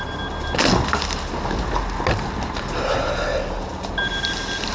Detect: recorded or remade recorded